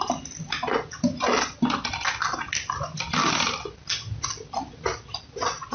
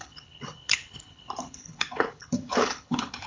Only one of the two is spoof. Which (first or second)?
second